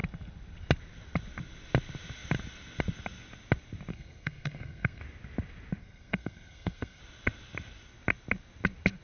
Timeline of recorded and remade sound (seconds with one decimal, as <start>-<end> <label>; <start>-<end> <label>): 0.0-3.9 recorded; 3.9-5.0 remade; 5.0-5.8 recorded; 5.8-7.0 remade; 7.0-9.0 recorded